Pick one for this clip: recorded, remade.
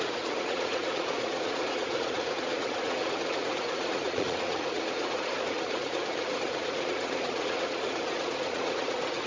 remade